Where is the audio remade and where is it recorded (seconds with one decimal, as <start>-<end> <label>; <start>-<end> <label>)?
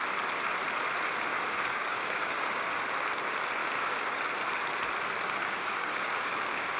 0.0-1.3 recorded; 1.3-2.8 remade; 2.8-3.6 recorded; 3.6-4.2 remade; 4.2-5.4 recorded; 5.4-6.8 remade